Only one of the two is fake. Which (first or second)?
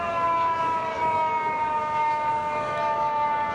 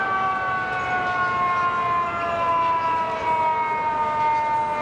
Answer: first